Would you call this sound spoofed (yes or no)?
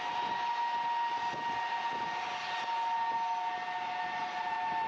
no